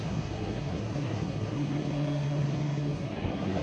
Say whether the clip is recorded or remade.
remade